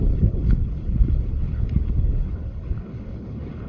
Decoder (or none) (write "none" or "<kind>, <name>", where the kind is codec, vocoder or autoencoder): codec, HILCodec